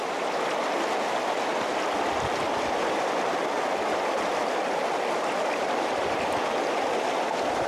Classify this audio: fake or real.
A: real